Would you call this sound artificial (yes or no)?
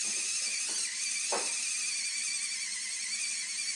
no